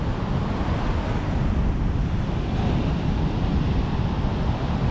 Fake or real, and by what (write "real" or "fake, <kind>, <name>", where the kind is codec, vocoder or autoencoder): real